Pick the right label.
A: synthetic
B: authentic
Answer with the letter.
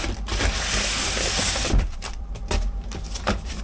A